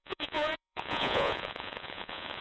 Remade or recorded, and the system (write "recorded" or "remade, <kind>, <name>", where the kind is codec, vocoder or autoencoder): remade, vocoder, Vocos